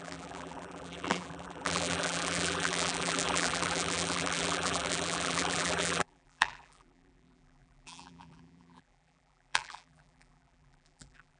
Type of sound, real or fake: fake